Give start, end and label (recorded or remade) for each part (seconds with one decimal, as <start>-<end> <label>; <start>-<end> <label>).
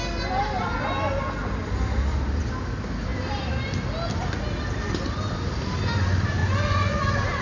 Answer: 0.0-6.4 recorded; 6.4-7.0 remade; 7.0-7.4 recorded